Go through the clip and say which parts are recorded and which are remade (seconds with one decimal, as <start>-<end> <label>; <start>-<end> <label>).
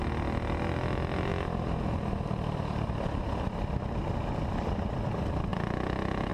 0.0-5.5 recorded; 5.5-6.3 remade